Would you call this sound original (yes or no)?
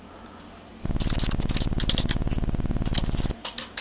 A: yes